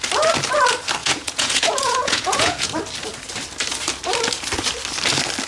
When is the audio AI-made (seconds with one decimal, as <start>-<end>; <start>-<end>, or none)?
1.0-2.7